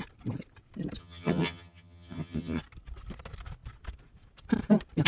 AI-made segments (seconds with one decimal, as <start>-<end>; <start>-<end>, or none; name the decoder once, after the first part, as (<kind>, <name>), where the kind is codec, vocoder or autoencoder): 1.0-2.6 (vocoder, HiFi-GAN)